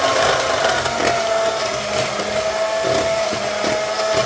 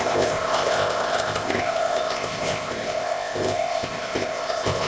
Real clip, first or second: first